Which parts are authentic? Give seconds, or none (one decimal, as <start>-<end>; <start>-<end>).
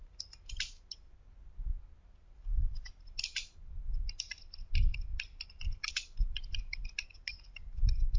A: 0.0-2.4; 2.9-8.2